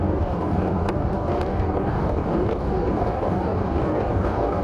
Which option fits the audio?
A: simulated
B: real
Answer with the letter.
A